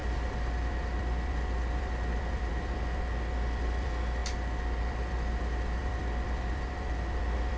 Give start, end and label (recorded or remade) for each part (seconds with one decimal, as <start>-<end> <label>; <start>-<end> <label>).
0.0-4.2 remade; 4.2-4.8 recorded; 4.8-7.6 remade